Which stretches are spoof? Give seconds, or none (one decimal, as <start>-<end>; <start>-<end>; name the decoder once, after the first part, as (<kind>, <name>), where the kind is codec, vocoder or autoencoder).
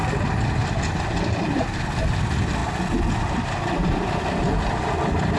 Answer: none